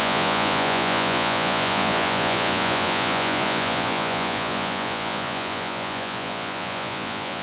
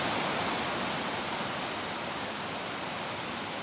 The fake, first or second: first